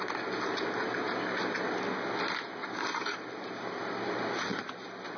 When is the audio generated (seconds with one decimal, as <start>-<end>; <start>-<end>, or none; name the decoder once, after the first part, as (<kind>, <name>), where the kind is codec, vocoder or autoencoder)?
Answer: none